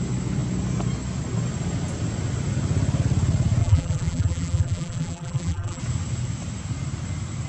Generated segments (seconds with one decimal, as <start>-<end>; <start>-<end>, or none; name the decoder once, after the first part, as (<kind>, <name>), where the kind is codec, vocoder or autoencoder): 3.6-5.8 (vocoder, BigVGAN v2)